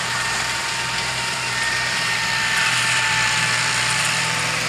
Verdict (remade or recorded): remade